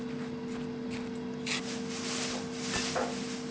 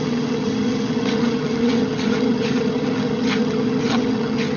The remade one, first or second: second